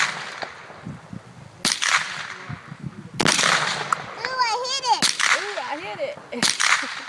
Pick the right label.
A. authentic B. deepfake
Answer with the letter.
A